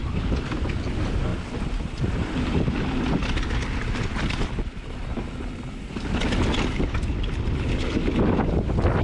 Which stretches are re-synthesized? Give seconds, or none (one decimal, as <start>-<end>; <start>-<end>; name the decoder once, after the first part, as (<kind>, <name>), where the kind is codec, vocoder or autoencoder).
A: none